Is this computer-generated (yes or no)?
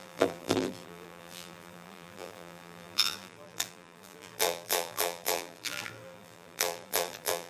yes